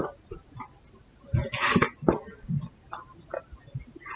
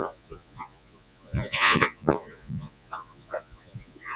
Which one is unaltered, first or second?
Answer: first